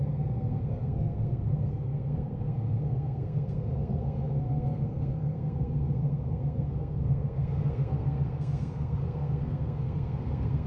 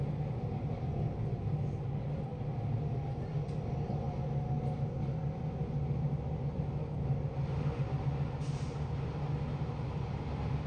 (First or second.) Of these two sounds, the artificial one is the first